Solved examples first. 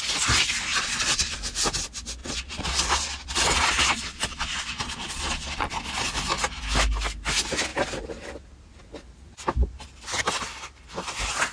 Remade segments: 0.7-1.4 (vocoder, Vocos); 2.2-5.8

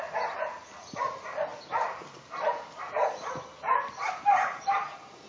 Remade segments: none

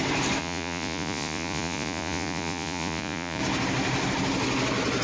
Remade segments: 0.4-3.4 (vocoder, Vocos)